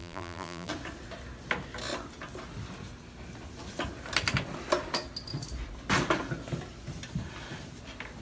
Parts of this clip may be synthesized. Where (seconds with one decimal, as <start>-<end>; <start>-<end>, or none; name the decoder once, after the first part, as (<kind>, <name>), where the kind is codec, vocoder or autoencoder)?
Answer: 0.0-0.7 (vocoder, BigVGAN v2)